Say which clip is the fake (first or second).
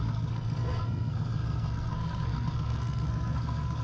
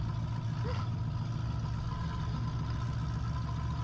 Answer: first